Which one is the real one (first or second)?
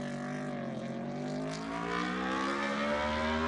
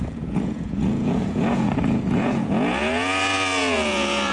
first